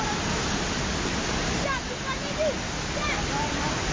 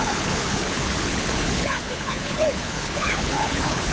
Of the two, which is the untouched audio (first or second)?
first